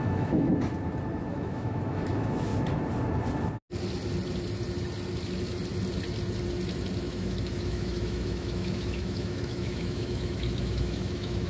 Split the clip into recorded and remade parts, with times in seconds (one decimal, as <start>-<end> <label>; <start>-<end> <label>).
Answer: 0.0-0.5 remade; 0.5-1.3 recorded; 1.3-2.5 remade; 2.5-7.0 recorded; 7.0-11.5 remade